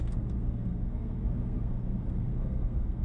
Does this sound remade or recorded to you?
remade